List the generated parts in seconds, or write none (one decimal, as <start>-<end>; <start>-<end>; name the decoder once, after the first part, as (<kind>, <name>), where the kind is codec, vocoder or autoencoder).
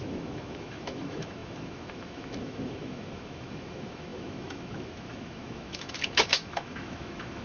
0.0-7.4 (autoencoder, DAC-VAE)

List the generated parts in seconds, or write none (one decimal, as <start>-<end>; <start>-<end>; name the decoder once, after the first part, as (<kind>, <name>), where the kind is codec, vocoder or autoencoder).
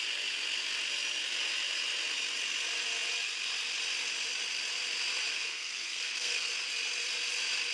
5.3-6.5 (codec, SNAC)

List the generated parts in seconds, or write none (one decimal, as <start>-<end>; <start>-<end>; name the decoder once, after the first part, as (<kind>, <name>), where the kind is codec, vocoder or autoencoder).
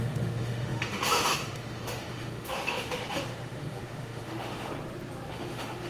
0.0-4.7 (autoencoder, DAC-VAE); 5.3-5.9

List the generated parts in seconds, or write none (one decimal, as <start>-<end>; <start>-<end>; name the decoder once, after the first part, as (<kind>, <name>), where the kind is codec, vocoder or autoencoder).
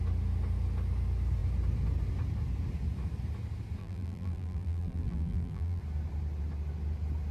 3.8-5.8 (vocoder, BigVGAN v2)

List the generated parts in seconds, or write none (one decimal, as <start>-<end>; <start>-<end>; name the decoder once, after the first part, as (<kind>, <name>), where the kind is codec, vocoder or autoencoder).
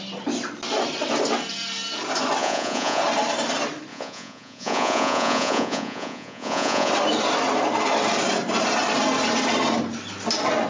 2.4-3.0 (vocoder, Vocos); 3.9-6.9